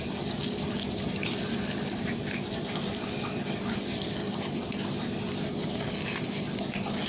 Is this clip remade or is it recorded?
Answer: recorded